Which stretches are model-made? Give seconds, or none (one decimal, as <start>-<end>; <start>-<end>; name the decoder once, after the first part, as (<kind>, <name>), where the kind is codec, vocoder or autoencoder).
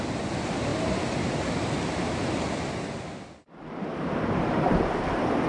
0.0-2.2 (vocoder, BigVGAN v2); 4.4-5.5